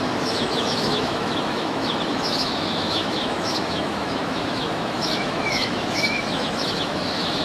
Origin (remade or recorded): remade